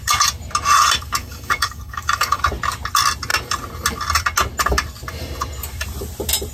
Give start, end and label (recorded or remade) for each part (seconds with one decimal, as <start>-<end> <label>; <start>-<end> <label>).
0.0-1.2 recorded; 1.2-2.4 remade; 2.4-6.5 recorded